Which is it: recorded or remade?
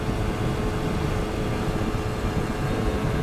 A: recorded